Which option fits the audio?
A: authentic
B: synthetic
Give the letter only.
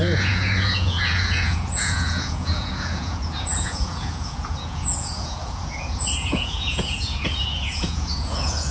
B